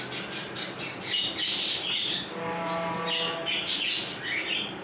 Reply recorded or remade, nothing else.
recorded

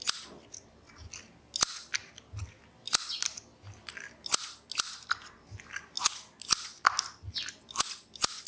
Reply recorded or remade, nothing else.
recorded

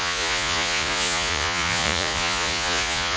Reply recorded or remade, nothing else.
remade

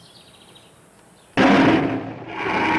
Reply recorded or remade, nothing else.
recorded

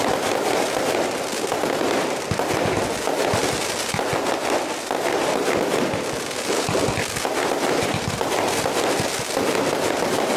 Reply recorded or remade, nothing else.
recorded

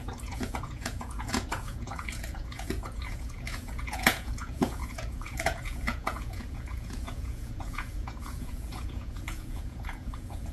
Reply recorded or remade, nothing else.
remade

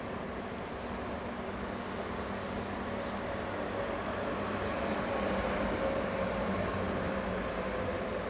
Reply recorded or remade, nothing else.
recorded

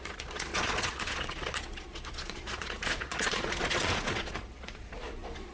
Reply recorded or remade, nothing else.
remade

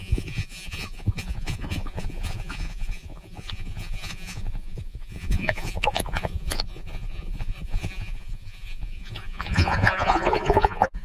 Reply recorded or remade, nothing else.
remade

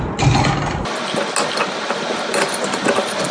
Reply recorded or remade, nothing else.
recorded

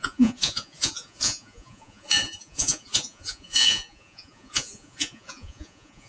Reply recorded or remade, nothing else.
remade